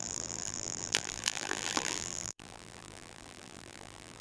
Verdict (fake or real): fake